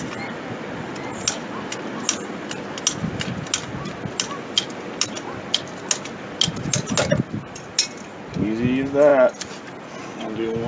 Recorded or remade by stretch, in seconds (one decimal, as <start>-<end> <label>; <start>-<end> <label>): 0.0-10.7 recorded